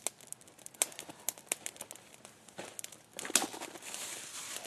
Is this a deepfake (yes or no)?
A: no